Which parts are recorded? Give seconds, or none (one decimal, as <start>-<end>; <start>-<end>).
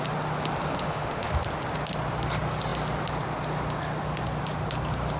0.0-0.7; 1.3-5.2